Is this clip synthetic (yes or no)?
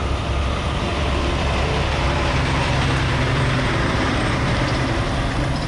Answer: yes